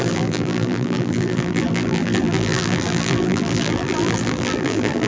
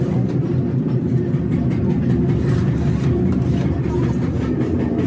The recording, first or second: second